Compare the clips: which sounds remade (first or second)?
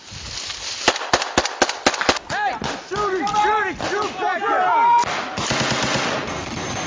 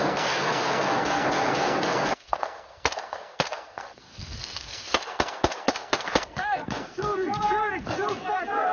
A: second